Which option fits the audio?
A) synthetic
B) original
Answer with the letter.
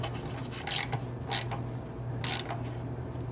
B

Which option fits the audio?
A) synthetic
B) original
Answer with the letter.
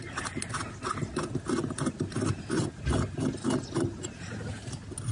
B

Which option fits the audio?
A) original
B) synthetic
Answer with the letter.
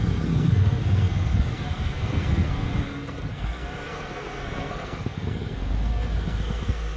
B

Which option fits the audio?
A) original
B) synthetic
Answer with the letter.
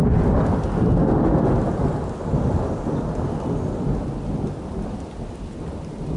A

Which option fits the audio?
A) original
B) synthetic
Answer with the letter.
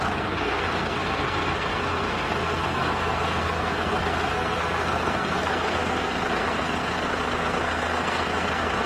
B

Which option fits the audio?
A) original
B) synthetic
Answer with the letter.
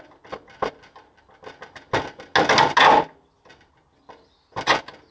A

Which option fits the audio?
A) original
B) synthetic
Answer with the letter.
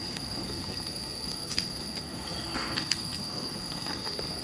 B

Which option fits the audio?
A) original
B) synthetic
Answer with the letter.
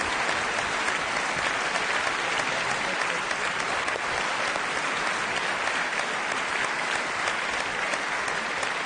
A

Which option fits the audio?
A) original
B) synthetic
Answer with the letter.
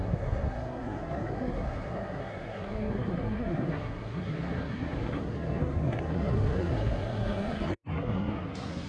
B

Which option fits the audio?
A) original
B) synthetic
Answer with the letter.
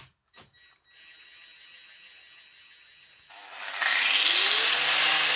A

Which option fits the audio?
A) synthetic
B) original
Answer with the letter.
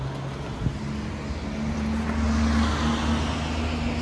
B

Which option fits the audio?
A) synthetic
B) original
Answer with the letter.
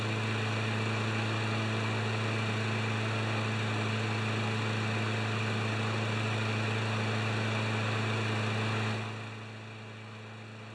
B